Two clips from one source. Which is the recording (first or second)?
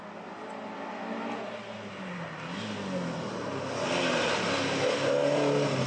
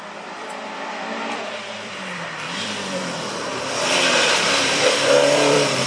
first